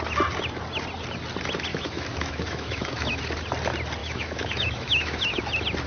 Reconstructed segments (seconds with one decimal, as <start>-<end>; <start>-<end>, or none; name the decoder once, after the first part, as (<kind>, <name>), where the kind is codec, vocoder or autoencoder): 1.7-3.2 (autoencoder, DAC-VAE); 4.0-5.4